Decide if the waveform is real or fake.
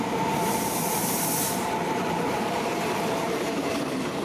fake